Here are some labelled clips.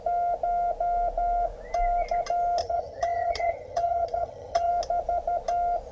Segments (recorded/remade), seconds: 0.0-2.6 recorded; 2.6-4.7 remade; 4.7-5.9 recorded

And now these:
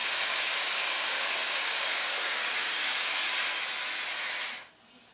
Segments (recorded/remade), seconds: 0.0-3.1 remade; 3.1-5.1 recorded

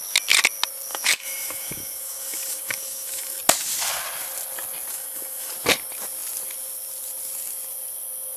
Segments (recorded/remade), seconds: 0.0-0.9 recorded; 0.9-3.4 remade; 3.4-4.9 recorded; 4.9-5.5 remade; 5.5-8.4 recorded

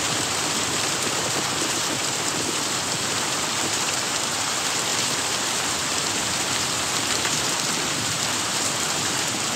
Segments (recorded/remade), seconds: 0.0-9.6 remade

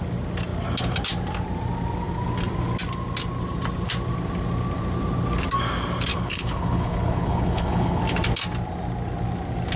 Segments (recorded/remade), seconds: 0.0-6.1 recorded; 6.1-8.0 remade; 8.0-9.8 recorded